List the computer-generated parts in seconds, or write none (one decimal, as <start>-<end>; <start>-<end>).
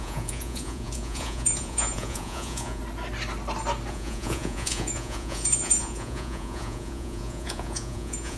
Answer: 0.0-2.8; 3.9-8.4